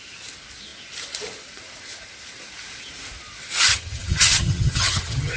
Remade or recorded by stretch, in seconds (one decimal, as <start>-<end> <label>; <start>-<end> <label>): 0.0-3.7 recorded; 3.7-5.4 remade